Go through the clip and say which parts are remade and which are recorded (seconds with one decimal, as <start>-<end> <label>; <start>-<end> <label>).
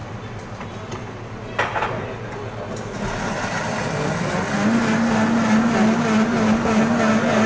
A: 0.0-7.5 recorded